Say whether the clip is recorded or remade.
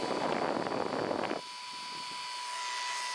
recorded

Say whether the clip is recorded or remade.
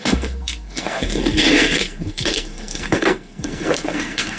remade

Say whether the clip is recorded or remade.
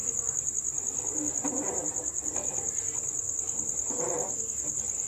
recorded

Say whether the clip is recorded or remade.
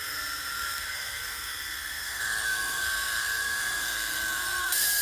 remade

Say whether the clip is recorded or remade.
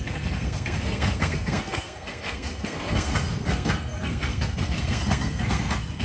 remade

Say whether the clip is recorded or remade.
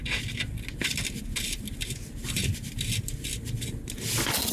recorded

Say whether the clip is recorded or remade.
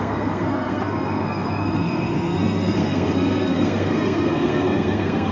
remade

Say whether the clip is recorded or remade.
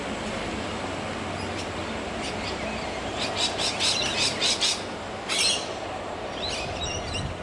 recorded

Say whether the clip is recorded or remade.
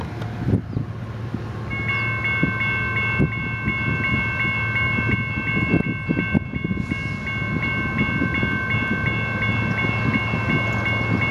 recorded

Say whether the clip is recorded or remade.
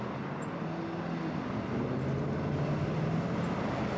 recorded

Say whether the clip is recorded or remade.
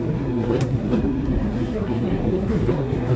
remade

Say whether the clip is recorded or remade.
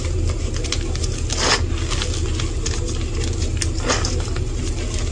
recorded